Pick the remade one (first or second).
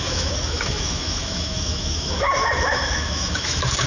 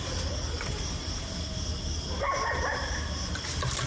first